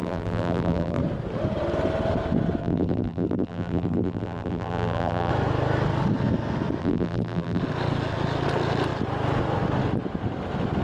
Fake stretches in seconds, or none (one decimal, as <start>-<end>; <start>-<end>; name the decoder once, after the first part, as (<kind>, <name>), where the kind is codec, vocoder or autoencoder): 0.0-1.0 (vocoder, BigVGAN v2); 2.6-5.3; 6.8-7.6